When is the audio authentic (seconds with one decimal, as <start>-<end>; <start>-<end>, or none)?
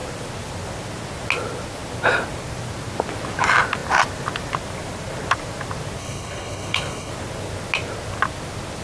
0.0-6.0; 7.1-8.8